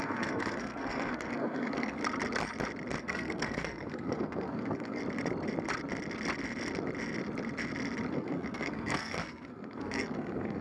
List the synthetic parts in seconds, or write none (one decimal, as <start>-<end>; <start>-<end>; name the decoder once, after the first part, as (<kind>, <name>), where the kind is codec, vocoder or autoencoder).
0.0-2.0 (codec, SNAC); 3.0-5.0; 8.1-10.6